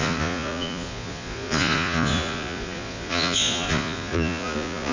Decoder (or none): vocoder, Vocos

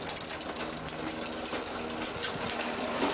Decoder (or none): none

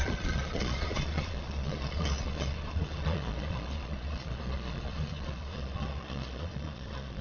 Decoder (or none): vocoder, Vocos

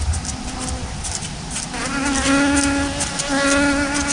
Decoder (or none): none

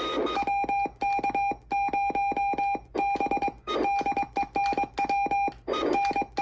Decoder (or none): none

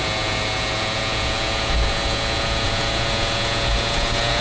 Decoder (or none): vocoder, Vocos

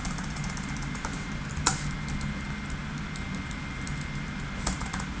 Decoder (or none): none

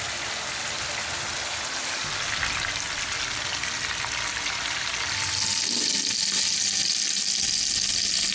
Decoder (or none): none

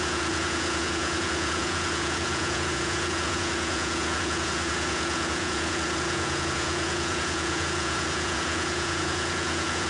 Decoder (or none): vocoder, Vocos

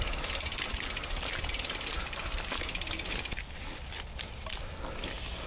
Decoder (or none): none